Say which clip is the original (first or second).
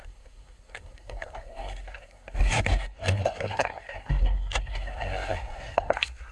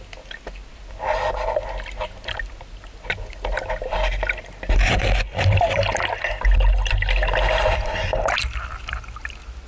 second